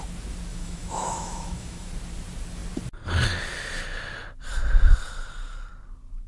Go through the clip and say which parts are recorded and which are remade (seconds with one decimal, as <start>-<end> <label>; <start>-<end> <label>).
0.0-0.5 recorded; 0.5-1.9 remade; 1.9-6.3 recorded